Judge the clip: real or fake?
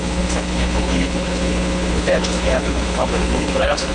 fake